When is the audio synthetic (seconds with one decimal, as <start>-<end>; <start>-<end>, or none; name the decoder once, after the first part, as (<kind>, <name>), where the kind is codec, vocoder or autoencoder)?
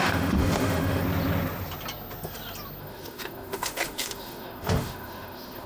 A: 0.0-1.0 (autoencoder, DAC-VAE); 2.8-5.7